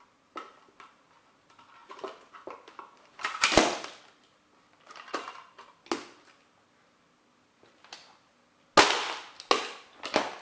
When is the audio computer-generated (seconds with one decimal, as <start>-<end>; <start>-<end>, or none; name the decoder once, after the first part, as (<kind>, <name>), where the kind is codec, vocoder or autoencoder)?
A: 1.8-3.6 (vocoder, BigVGAN v2)